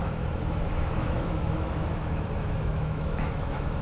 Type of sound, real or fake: fake